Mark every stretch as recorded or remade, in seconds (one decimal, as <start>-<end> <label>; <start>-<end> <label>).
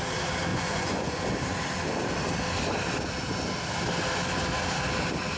0.0-0.5 recorded; 0.5-1.2 remade; 1.2-5.4 recorded